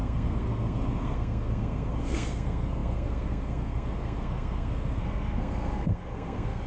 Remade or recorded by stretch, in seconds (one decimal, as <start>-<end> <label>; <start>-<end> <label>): 0.0-6.7 remade